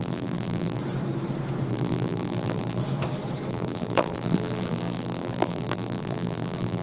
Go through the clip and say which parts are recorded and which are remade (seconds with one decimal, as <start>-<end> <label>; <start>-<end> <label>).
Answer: 0.0-0.8 remade; 0.8-1.7 recorded; 1.7-2.8 remade; 2.8-3.5 recorded; 3.5-6.8 remade